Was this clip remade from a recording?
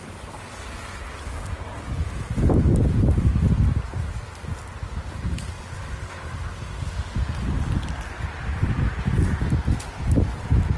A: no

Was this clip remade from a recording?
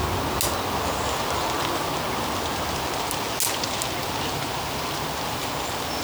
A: no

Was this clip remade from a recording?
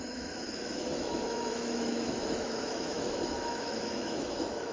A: yes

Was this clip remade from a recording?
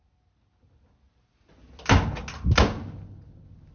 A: no